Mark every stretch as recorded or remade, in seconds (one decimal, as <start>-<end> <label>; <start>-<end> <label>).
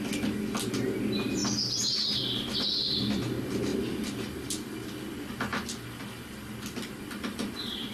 0.0-1.4 recorded; 1.4-2.2 remade; 2.2-3.7 recorded; 3.7-5.1 remade; 5.1-7.9 recorded